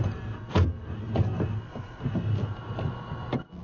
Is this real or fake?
real